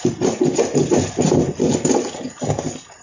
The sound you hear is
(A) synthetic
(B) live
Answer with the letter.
B